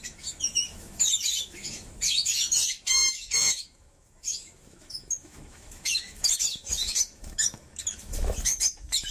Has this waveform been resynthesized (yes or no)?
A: yes